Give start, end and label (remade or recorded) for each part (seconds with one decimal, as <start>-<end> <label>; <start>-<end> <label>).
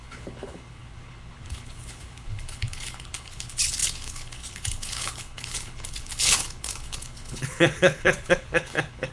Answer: 0.0-9.1 remade